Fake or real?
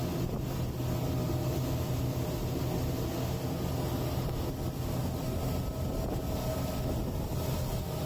real